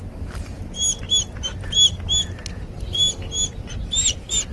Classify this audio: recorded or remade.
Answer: recorded